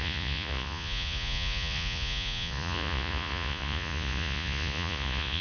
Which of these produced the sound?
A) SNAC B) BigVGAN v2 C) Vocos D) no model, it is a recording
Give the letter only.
C